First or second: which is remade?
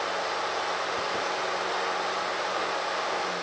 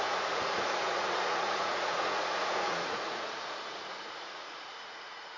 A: second